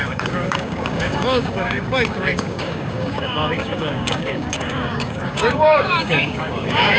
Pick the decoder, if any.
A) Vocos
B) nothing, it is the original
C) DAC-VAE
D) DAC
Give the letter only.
D